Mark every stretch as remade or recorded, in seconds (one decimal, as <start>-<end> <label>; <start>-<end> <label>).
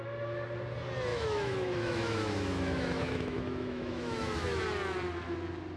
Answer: 0.0-1.1 recorded; 1.1-4.6 remade; 4.6-5.8 recorded